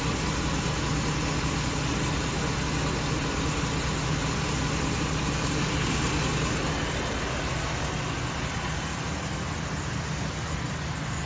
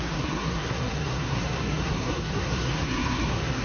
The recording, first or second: first